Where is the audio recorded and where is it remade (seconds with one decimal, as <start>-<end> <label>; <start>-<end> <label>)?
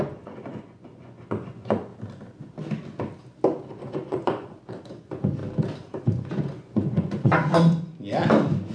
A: 0.0-1.9 remade; 1.9-3.8 recorded; 3.8-5.4 remade; 5.4-6.0 recorded; 6.0-7.9 remade; 7.9-8.7 recorded